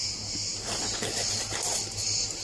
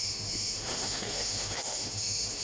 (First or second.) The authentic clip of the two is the first